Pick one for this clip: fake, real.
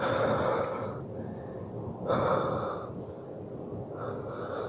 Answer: real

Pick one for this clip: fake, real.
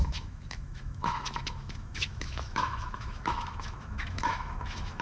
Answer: fake